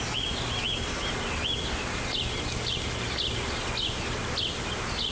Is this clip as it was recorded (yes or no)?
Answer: yes